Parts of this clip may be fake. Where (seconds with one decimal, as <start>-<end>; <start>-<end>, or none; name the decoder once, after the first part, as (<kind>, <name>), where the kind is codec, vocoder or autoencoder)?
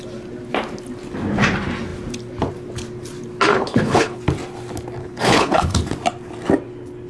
3.5-4.2 (codec, HILCodec); 5.0-5.8